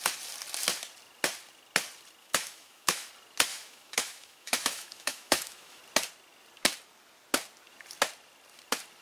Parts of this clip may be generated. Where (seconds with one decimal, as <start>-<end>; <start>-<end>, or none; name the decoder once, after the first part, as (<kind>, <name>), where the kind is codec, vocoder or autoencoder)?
2.2-3.1 (autoencoder, DAC-VAE); 3.5-5.8